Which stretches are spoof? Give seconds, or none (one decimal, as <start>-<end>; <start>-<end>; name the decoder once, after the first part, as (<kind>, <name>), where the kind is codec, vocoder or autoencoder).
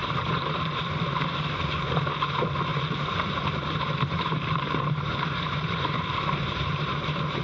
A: 0.0-0.8 (vocoder, BigVGAN v2); 2.7-7.4